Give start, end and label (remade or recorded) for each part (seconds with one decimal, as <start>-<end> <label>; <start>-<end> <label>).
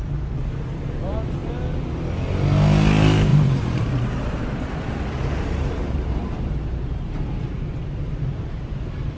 0.0-3.3 recorded; 3.3-8.1 remade; 8.1-9.2 recorded